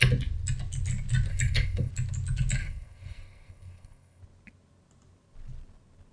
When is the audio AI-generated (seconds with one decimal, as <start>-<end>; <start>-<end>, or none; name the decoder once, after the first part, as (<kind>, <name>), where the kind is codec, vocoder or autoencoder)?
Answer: 1.3-1.9 (codec, SNAC); 2.6-4.2